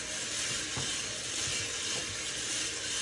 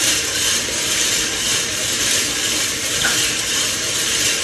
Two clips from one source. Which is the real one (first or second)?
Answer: first